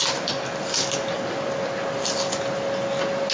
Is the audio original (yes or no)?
yes